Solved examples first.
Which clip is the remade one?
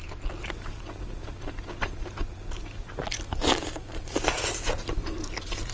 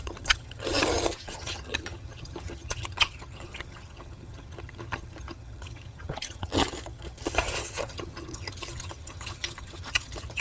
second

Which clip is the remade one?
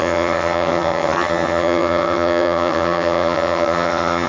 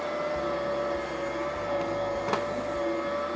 first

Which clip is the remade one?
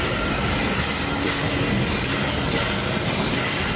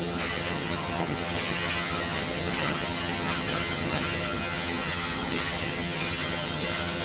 second